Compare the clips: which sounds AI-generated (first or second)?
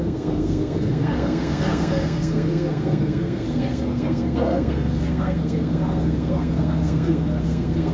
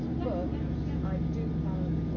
first